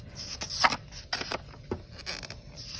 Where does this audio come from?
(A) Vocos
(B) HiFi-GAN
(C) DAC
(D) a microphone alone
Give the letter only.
D